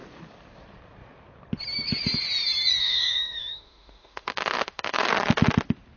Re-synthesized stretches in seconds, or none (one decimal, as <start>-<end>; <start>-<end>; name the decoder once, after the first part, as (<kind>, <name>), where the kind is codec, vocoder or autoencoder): 2.8-5.1 (autoencoder, DAC-VAE)